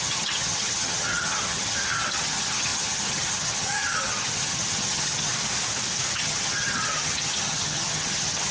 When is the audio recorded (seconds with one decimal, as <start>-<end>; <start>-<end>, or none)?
5.3-6.1